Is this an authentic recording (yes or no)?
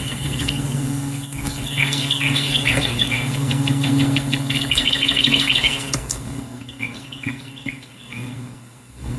no